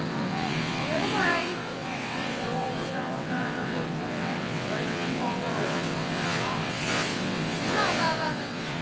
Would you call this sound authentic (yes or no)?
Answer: no